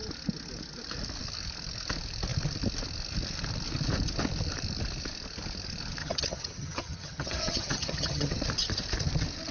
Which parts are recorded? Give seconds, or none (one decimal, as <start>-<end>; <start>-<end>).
0.0-6.0; 8.4-9.5